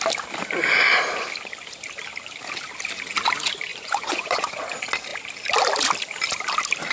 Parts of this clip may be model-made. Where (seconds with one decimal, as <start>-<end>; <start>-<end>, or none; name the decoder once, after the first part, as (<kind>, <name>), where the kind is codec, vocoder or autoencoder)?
3.7-4.5 (vocoder, Vocos)